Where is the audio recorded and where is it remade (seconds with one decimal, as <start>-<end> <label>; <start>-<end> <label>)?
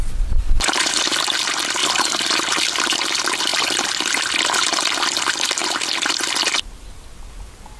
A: 0.0-0.4 recorded; 0.4-1.0 remade; 1.0-1.8 recorded; 1.8-2.5 remade; 2.5-3.5 recorded; 3.5-5.0 remade; 5.0-7.8 recorded